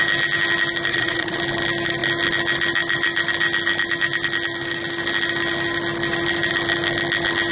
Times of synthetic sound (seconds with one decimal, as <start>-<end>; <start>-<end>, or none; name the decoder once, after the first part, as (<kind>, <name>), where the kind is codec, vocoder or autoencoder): 0.9-1.4 (vocoder, Vocos)